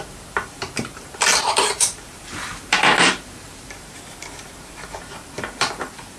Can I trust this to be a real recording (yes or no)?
no